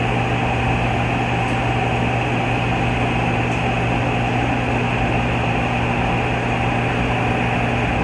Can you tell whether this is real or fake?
real